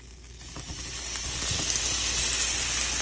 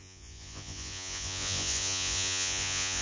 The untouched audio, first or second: first